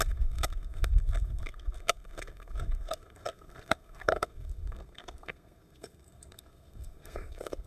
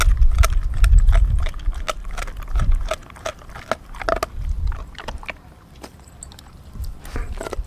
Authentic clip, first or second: second